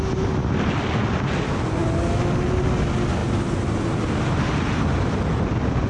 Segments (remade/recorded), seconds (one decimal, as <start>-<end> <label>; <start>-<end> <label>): 0.0-5.9 recorded